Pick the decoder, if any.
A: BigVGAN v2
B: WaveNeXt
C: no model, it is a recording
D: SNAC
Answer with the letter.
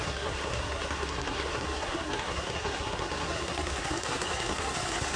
D